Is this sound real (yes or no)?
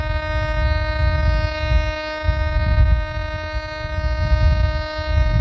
yes